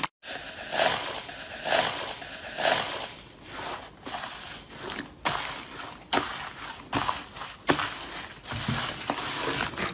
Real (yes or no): yes